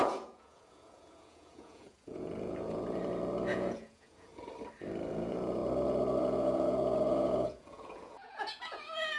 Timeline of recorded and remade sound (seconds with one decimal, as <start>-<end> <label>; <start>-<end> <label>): 0.0-3.0 remade; 3.0-3.5 recorded; 3.5-4.3 remade; 4.3-5.1 recorded; 5.1-5.6 remade; 5.6-6.2 recorded; 6.2-9.2 remade